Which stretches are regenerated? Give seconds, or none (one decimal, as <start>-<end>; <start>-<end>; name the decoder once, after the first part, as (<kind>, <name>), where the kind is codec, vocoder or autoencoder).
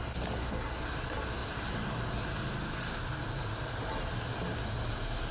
none